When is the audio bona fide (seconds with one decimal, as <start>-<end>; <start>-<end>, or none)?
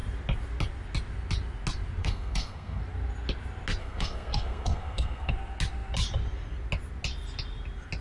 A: 0.0-2.0; 2.8-3.8; 5.3-8.0